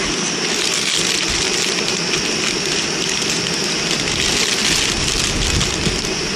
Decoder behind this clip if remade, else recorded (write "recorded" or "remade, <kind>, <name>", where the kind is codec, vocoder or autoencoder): recorded